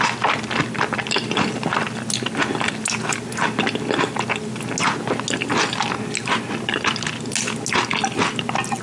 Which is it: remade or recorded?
recorded